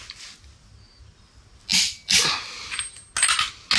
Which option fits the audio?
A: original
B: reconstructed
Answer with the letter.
A